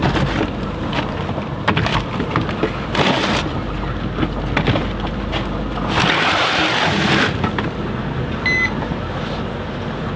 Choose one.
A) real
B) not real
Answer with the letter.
A